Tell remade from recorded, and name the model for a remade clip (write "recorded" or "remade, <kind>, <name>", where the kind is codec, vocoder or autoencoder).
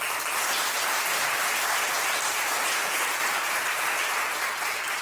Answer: recorded